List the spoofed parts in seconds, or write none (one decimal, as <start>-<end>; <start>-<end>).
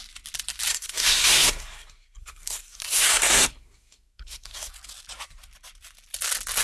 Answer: 0.7-4.7